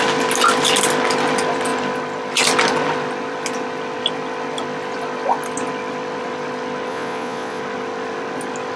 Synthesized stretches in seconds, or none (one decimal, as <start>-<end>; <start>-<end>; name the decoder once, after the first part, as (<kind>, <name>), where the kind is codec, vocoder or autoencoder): 6.9-7.6 (vocoder, Vocos)